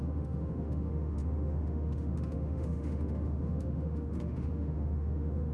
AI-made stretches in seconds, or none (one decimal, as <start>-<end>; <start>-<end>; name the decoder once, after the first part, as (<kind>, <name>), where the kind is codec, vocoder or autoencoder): 0.0-5.5 (autoencoder, DAC-VAE)